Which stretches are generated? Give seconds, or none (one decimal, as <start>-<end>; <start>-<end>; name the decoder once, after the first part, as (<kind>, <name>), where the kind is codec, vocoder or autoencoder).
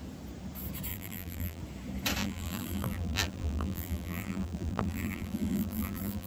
0.9-1.6 (vocoder, BigVGAN v2); 2.2-6.3